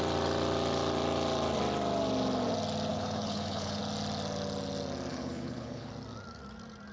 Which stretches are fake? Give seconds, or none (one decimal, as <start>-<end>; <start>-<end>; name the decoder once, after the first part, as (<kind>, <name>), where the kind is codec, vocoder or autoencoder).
2.9-3.8 (codec, HILCodec); 5.1-5.9